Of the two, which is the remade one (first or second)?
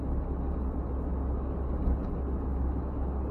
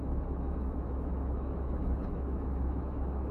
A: second